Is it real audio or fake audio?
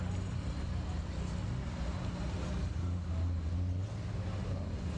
real